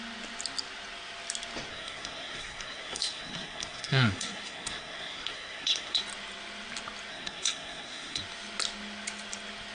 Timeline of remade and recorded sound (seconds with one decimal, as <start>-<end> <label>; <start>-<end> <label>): 0.0-1.7 recorded; 1.7-6.0 remade; 6.0-7.1 recorded; 7.1-8.2 remade; 8.2-9.7 recorded